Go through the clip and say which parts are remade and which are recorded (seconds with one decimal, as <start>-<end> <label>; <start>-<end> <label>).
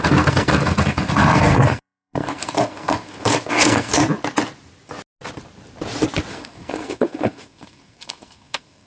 0.0-4.0 remade; 4.0-6.3 recorded; 6.3-8.9 remade